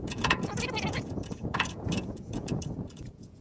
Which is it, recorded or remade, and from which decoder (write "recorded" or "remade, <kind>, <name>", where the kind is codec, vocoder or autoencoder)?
remade, vocoder, Vocos